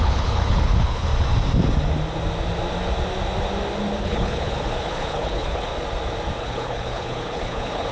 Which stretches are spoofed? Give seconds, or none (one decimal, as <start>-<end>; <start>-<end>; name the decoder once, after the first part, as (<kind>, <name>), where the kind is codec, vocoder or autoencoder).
0.0-1.1 (codec, HILCodec); 4.0-5.7; 6.4-7.9